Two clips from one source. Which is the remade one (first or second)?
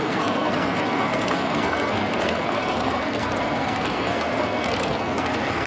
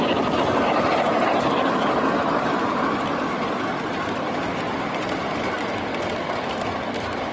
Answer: first